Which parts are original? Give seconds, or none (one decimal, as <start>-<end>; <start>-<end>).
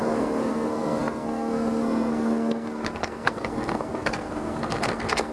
none